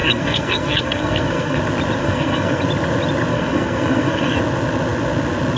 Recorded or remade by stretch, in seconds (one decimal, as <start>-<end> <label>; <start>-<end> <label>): 0.0-1.6 remade; 1.6-2.0 recorded; 2.0-2.6 remade; 2.6-3.3 recorded; 3.3-4.4 remade; 4.4-5.6 recorded